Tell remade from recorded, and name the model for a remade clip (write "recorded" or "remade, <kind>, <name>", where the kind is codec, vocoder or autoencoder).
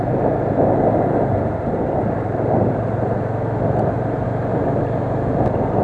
recorded